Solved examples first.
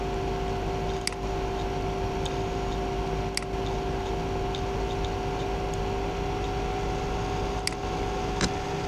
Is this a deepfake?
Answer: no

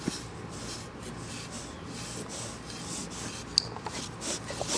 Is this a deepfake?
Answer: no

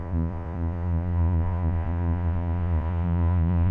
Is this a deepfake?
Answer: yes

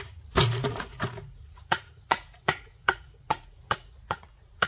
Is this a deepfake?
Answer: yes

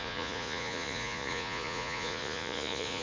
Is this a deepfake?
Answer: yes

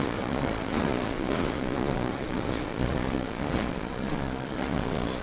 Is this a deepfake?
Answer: yes